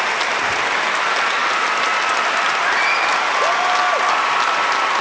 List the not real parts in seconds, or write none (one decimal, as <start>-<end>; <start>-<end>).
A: none